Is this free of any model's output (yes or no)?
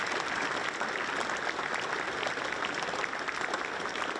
yes